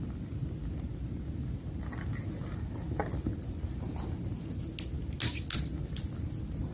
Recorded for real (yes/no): yes